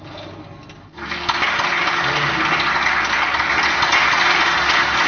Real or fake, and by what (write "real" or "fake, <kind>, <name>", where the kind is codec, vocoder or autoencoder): real